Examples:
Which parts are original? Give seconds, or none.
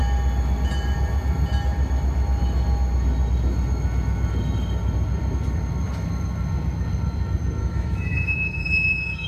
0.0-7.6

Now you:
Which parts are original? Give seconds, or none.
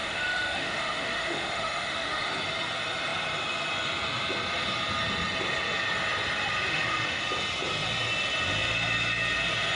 2.3-6.7; 7.2-9.7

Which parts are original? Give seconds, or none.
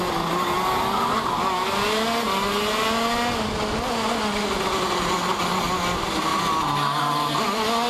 0.0-7.9